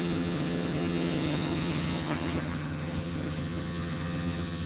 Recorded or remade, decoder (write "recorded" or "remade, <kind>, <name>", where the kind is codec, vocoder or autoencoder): remade, vocoder, HiFi-GAN